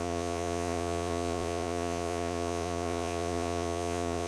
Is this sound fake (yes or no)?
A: yes